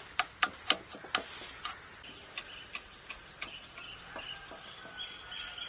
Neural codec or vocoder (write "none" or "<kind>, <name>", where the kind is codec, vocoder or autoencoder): vocoder, BigVGAN v2